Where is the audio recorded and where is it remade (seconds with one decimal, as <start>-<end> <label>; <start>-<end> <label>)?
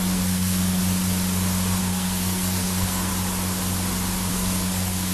0.0-0.8 remade; 0.8-1.8 recorded; 1.8-3.1 remade; 3.1-4.3 recorded; 4.3-5.1 remade